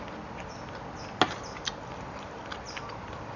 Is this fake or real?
real